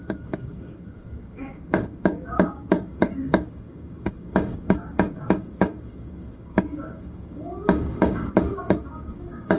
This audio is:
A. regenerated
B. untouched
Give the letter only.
A